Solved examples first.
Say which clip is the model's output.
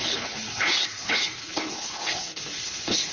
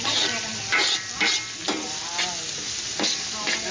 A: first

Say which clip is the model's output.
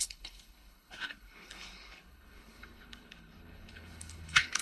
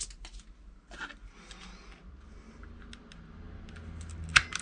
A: first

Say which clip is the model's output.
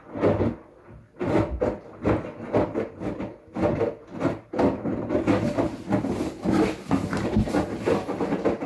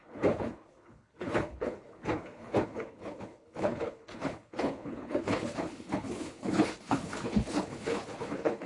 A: second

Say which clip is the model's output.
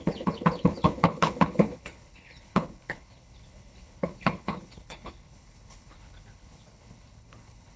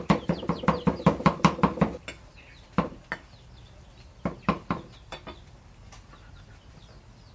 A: first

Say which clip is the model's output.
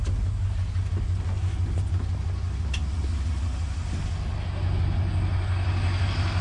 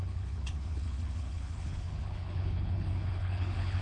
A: second